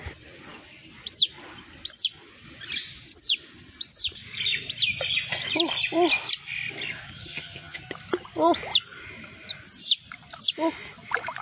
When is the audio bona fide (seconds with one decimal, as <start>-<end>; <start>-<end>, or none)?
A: 0.0-7.3; 7.8-11.4